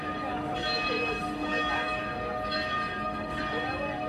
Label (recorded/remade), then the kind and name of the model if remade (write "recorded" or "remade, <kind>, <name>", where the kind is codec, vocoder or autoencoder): remade, codec, DAC